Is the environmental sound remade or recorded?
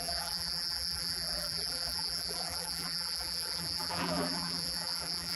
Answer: remade